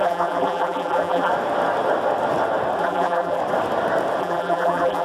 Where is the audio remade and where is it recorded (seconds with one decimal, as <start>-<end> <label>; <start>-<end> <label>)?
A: 0.0-1.3 remade; 1.3-2.8 recorded; 2.8-3.4 remade; 3.4-4.2 recorded; 4.2-5.0 remade